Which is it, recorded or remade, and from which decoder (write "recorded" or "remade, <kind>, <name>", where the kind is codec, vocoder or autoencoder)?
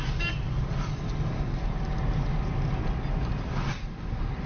recorded